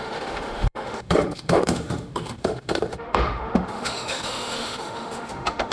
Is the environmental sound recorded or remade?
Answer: remade